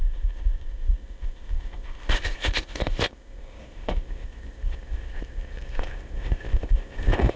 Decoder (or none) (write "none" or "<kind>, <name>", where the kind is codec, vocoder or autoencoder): codec, ZipCodec